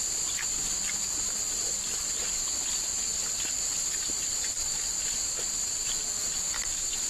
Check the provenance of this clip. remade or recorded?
recorded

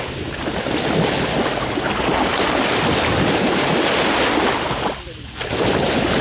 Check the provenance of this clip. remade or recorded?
recorded